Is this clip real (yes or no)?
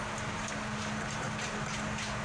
yes